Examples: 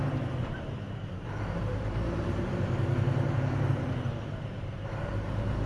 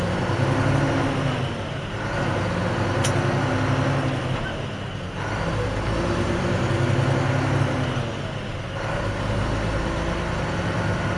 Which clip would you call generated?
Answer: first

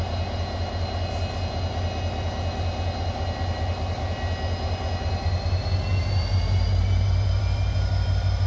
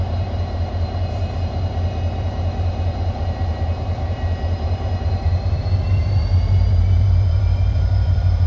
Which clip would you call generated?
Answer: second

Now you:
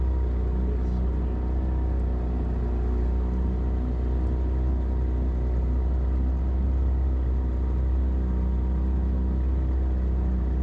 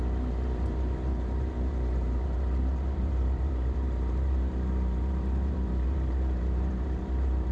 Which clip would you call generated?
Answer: second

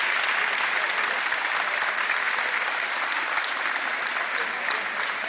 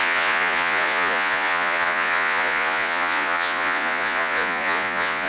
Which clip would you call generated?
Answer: second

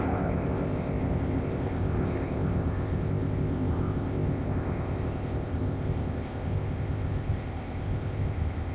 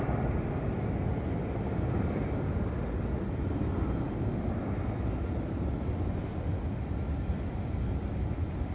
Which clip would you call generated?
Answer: first